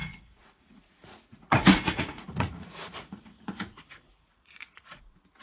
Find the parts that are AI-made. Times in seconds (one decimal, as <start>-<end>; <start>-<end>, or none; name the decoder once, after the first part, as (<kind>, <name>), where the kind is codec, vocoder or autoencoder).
0.0-5.4 (vocoder, Vocos)